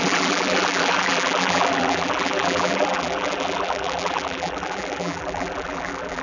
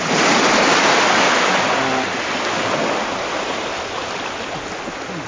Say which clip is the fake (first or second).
first